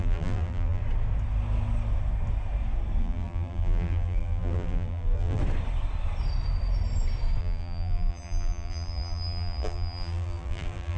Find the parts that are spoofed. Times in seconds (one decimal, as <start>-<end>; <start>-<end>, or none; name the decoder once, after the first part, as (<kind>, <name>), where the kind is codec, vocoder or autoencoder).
0.0-0.8 (vocoder, BigVGAN v2); 3.0-5.4; 7.4-11.0